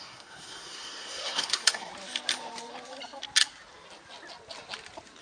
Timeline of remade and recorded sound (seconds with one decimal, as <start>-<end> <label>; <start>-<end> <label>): 0.0-1.9 remade; 1.9-5.2 recorded